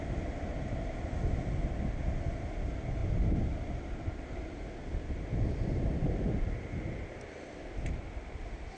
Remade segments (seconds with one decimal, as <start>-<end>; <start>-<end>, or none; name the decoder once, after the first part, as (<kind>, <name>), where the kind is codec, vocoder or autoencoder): none